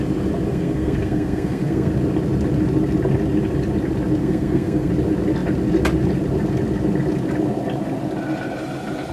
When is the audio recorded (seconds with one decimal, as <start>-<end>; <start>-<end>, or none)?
0.0-0.5; 1.9-4.2; 4.9-9.1